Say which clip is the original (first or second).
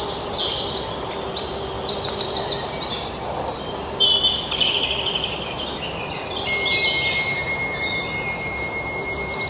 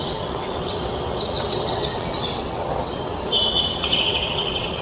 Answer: first